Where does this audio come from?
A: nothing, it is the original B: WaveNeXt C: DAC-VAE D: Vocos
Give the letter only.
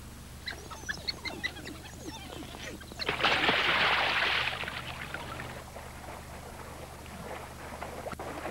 A